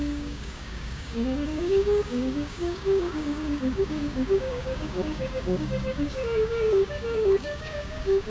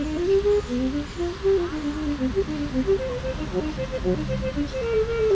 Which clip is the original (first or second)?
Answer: second